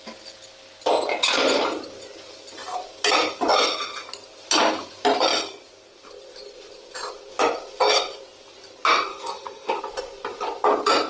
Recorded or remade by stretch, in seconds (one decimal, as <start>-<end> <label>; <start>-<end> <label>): 0.0-9.1 recorded; 9.1-9.8 remade; 9.8-11.1 recorded